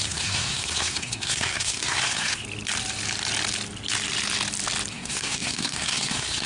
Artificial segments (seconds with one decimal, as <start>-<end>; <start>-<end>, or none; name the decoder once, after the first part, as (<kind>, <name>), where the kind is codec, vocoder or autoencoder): 0.0-2.4 (codec, SNAC); 4.9-6.5